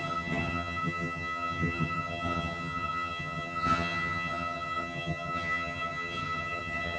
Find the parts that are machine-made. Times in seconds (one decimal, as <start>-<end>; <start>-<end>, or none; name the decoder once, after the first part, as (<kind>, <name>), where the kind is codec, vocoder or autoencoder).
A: 0.0-7.0 (vocoder, HiFi-GAN)